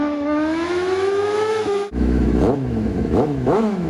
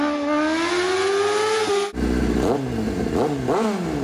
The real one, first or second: second